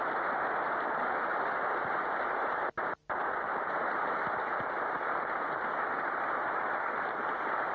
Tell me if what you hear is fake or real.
real